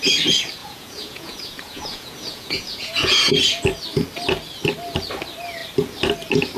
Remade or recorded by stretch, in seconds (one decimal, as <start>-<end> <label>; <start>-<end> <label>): 0.0-0.6 recorded; 0.6-3.3 remade; 3.3-6.6 recorded